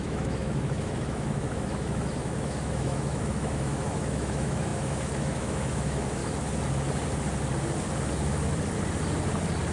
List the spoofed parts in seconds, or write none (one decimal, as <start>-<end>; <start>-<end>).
0.0-6.2